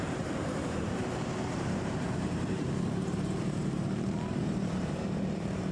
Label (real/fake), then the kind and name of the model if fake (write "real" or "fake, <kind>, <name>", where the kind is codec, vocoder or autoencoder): fake, vocoder, BigVGAN v2